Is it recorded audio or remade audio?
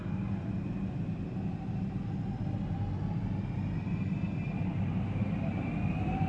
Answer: recorded